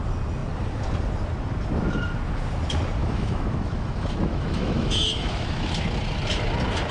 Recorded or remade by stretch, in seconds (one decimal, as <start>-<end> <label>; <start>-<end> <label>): 0.0-3.0 recorded; 3.0-5.7 remade; 5.7-6.9 recorded